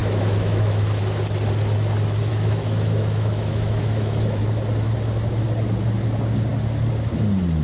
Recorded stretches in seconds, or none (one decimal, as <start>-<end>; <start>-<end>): 1.0-2.3; 4.4-7.6